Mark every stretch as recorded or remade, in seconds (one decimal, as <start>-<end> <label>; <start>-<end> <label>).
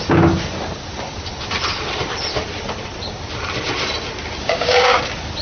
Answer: 0.0-4.4 recorded; 4.4-5.0 remade; 5.0-5.4 recorded